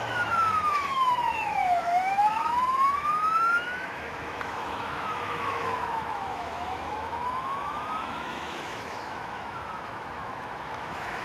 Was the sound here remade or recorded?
remade